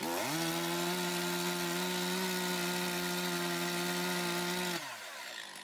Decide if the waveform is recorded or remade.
recorded